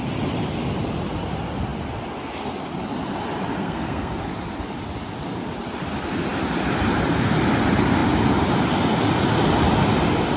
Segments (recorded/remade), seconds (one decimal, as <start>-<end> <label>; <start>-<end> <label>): 0.0-3.6 recorded; 3.6-4.2 remade; 4.2-10.4 recorded